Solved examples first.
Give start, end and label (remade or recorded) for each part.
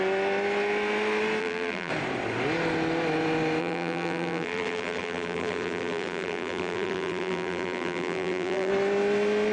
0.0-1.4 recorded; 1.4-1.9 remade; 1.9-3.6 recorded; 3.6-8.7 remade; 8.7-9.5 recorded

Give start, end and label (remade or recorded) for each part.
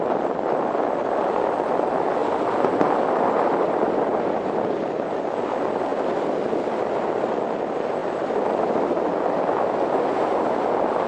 0.0-11.1 recorded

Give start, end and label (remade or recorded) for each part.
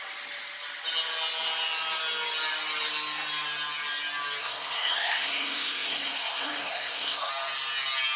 0.0-4.4 recorded; 4.4-7.3 remade; 7.3-8.2 recorded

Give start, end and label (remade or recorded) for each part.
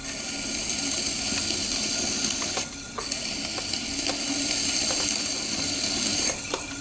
0.0-6.1 recorded; 6.1-6.8 remade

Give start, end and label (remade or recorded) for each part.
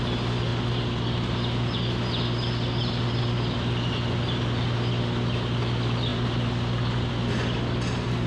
0.0-8.3 recorded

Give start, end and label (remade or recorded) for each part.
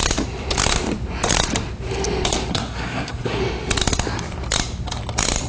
0.0-2.5 recorded; 2.5-3.4 remade; 3.4-5.5 recorded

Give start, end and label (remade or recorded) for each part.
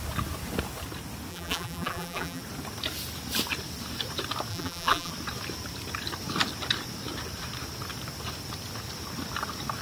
0.0-1.3 recorded; 1.3-2.4 remade; 2.4-4.5 recorded; 4.5-5.1 remade; 5.1-9.8 recorded